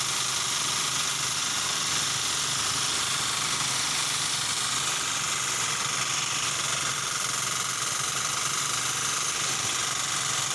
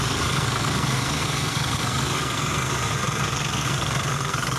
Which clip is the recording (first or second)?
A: first